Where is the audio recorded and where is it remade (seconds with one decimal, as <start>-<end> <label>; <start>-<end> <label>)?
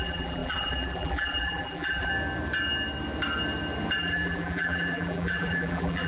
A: 0.0-2.1 remade; 2.1-4.0 recorded; 4.0-6.1 remade